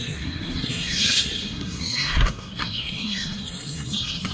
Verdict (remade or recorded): remade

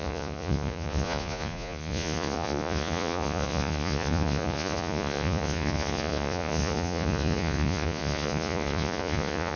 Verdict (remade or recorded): remade